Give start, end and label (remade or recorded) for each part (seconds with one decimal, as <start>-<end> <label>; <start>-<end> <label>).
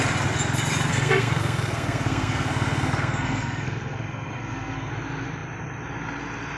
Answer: 0.0-0.9 recorded; 0.9-4.9 remade; 4.9-6.6 recorded